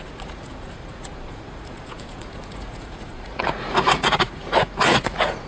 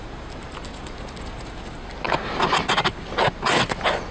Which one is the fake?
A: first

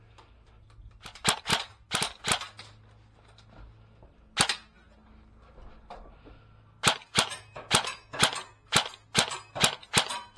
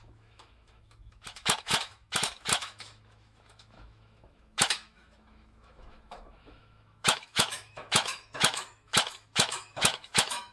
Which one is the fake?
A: second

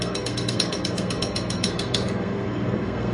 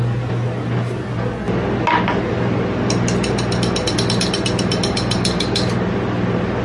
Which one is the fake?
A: first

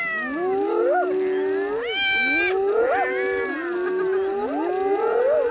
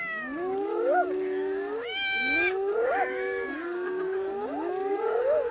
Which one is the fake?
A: second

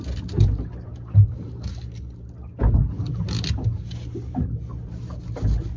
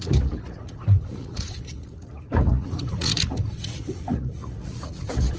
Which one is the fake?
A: second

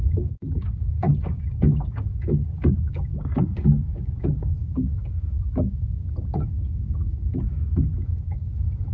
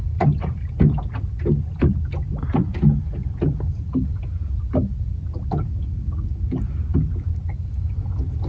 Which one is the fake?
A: first